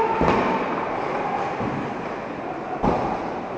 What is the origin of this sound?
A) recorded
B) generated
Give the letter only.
A